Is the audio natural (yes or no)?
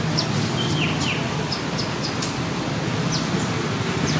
yes